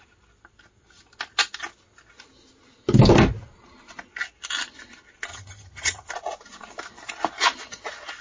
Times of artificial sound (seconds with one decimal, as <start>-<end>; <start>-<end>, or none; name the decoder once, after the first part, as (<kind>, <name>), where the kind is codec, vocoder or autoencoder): 5.3-6.1 (vocoder, HiFi-GAN)